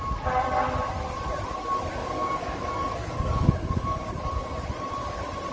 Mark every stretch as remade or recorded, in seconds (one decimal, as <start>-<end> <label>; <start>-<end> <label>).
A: 0.0-2.0 recorded; 2.0-4.1 remade; 4.1-5.5 recorded